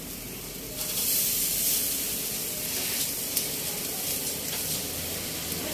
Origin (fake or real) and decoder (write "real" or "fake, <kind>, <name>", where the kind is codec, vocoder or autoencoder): real